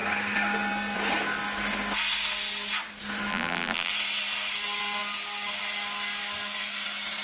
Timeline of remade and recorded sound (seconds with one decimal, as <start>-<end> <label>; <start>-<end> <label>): 0.0-3.3 recorded; 3.3-3.9 remade; 3.9-7.2 recorded